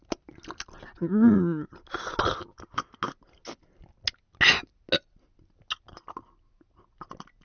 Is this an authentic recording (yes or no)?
yes